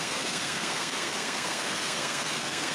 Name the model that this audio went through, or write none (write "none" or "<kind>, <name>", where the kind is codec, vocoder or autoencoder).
codec, SNAC